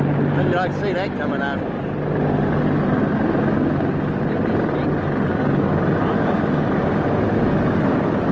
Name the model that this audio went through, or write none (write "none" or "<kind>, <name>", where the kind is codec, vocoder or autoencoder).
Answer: none